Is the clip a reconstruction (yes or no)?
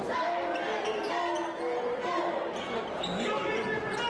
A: no